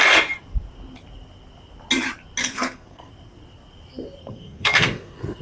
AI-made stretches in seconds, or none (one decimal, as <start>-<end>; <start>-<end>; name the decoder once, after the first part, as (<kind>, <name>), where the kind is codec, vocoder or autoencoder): 2.4-3.1 (codec, SNAC); 4.2-5.4